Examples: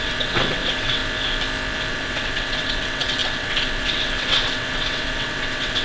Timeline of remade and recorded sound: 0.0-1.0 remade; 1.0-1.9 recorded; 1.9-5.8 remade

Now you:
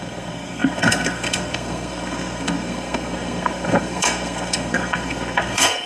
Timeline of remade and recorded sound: 0.0-5.9 remade